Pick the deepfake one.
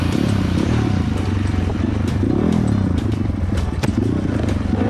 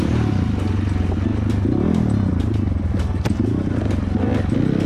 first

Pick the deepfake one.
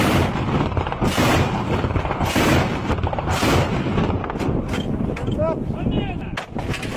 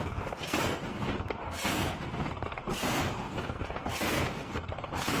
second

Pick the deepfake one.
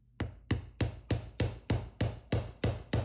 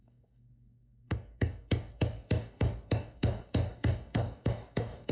second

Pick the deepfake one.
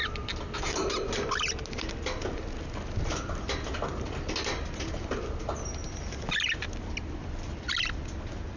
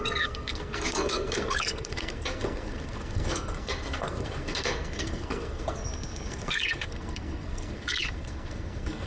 second